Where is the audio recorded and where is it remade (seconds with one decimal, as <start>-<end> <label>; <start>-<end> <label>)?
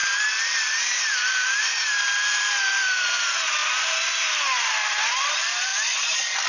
0.0-6.5 recorded